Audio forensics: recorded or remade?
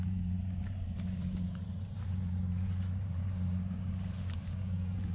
remade